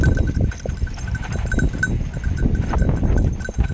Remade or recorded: recorded